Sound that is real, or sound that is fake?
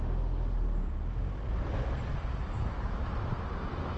real